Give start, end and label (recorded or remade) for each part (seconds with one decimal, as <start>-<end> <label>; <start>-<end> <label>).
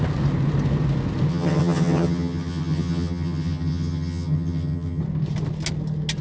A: 0.0-1.3 recorded; 1.3-5.0 remade; 5.0-6.2 recorded